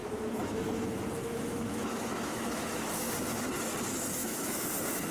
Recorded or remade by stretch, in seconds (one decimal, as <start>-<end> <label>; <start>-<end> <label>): 0.0-3.1 remade; 3.1-4.2 recorded; 4.2-5.1 remade